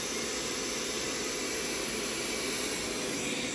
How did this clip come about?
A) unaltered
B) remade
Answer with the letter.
A